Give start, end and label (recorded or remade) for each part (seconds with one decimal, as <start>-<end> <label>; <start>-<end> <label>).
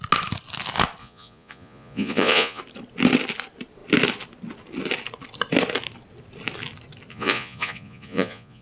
0.0-1.0 recorded; 1.0-2.6 remade; 2.6-7.1 recorded; 7.1-8.6 remade